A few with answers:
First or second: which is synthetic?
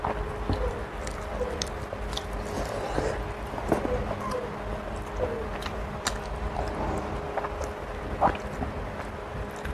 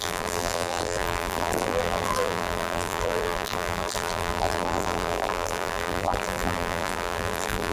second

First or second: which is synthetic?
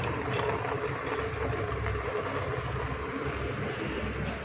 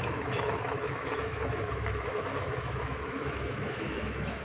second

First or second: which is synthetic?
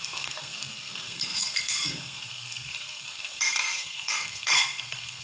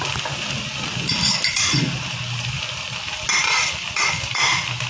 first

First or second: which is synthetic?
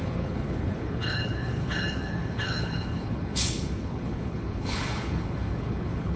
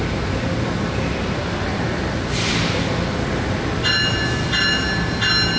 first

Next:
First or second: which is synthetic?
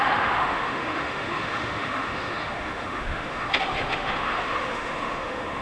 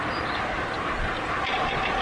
first